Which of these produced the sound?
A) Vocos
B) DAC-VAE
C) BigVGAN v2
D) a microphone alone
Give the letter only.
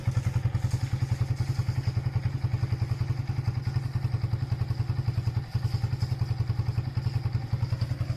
D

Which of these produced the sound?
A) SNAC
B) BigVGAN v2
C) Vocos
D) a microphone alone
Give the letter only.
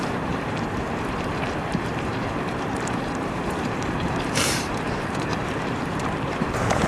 B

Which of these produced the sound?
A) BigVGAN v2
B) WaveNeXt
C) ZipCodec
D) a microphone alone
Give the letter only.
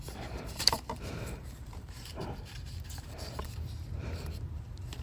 A